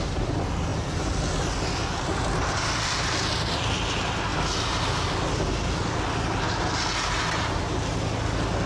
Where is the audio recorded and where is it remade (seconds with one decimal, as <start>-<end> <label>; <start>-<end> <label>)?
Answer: 0.0-8.7 recorded